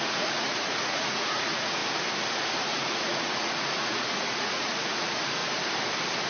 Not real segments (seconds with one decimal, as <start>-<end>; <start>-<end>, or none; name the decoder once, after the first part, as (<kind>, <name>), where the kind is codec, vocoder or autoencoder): 0.0-1.8 (vocoder, Vocos); 2.6-5.4